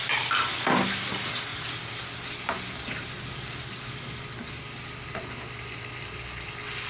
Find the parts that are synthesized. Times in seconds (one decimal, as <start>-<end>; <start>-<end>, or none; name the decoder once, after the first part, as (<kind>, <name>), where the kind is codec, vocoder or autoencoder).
none